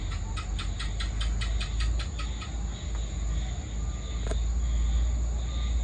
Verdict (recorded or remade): recorded